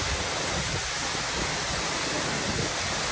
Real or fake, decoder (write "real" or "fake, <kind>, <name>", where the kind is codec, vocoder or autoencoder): real